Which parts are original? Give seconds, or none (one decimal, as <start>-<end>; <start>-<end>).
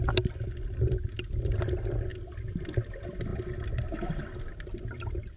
0.0-5.4